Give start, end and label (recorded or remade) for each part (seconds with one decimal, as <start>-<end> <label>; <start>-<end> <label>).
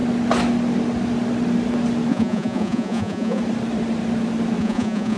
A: 0.0-2.1 recorded; 2.1-3.4 remade; 3.4-4.6 recorded; 4.6-5.2 remade